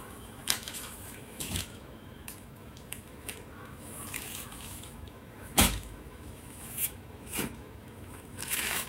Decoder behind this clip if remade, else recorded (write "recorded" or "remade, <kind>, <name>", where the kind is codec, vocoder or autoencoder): remade, autoencoder, DAC-VAE